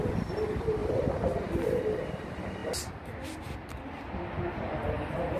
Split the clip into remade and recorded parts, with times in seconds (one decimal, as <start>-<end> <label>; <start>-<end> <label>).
0.0-0.8 recorded; 0.8-1.5 remade; 1.5-5.4 recorded